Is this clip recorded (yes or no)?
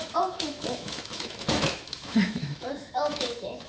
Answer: no